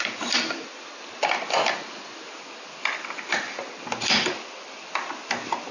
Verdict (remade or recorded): recorded